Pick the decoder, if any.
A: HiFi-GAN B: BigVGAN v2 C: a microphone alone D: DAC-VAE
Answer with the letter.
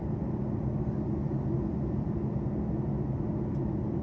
C